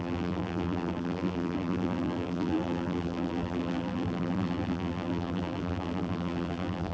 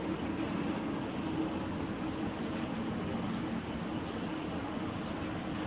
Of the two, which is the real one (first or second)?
second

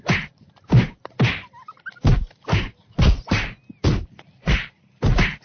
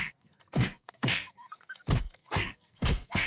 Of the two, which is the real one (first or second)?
first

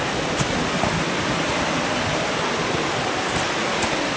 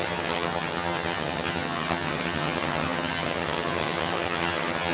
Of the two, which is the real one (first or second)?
first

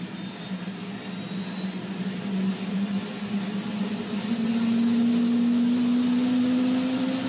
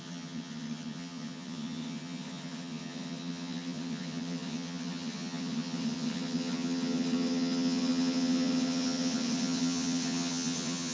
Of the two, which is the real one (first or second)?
first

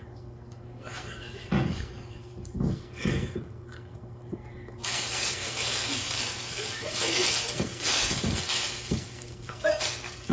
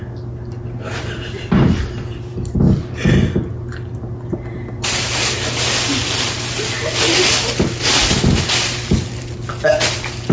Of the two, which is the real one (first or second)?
second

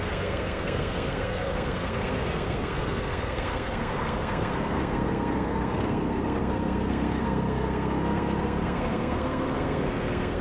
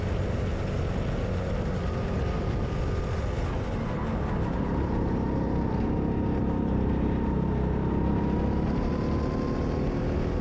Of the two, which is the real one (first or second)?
second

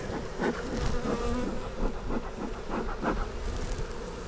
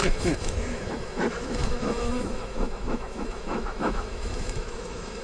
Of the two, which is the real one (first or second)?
first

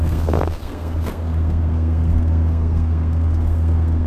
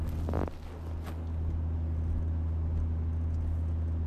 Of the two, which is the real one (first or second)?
second